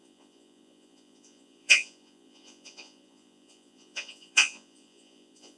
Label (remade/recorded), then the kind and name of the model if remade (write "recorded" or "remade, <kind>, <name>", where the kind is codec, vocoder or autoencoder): remade, vocoder, Vocos